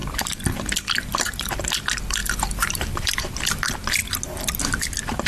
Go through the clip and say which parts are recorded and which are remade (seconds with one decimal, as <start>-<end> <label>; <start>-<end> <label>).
0.0-0.6 remade; 0.6-2.2 recorded; 2.2-3.2 remade; 3.2-5.3 recorded